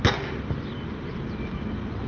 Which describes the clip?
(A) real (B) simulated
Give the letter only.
A